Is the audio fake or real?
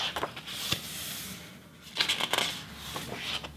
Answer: real